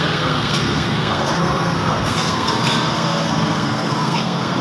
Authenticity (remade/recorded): remade